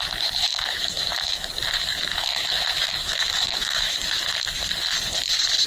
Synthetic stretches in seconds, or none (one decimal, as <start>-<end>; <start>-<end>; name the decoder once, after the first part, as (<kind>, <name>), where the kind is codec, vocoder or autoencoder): 0.5-1.5 (autoencoder, DAC-VAE); 1.9-3.9